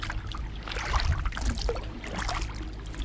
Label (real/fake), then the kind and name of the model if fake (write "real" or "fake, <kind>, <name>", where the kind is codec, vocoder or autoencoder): real